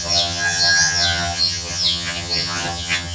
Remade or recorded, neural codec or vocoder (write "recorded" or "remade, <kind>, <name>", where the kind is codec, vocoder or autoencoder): remade, vocoder, HiFi-GAN